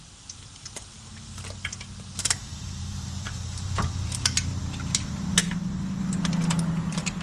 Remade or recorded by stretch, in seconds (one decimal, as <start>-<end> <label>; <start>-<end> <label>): 0.0-2.5 recorded; 2.5-4.6 remade; 4.6-7.2 recorded